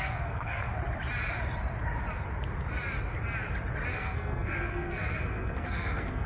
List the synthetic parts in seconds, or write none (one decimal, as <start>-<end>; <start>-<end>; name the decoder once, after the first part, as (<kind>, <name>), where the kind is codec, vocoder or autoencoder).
0.0-0.7 (codec, SNAC); 3.9-6.3